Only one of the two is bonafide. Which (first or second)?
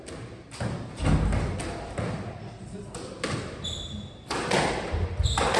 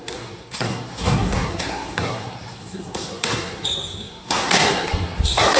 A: first